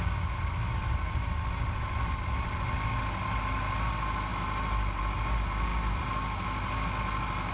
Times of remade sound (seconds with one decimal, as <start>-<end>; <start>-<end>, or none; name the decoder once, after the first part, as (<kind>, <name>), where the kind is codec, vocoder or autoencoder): none